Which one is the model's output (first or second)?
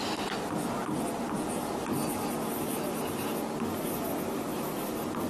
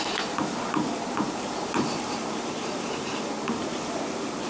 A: second